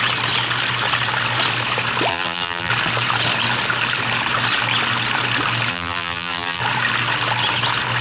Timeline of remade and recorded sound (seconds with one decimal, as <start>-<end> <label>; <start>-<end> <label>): 0.0-2.1 recorded; 2.1-2.7 remade; 2.7-5.7 recorded; 5.7-6.6 remade; 6.6-8.0 recorded